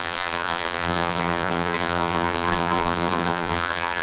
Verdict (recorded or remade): remade